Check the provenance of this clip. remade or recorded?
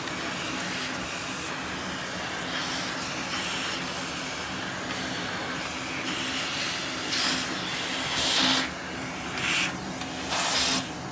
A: recorded